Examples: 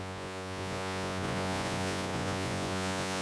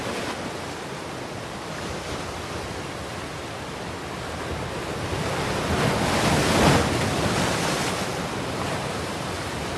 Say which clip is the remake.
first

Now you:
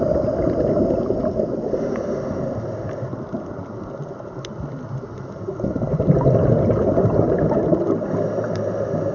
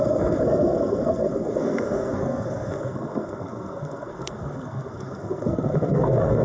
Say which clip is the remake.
second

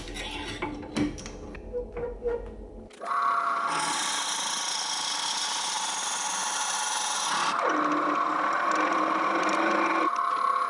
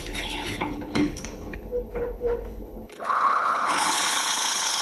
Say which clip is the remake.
second